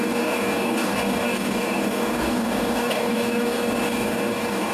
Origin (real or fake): fake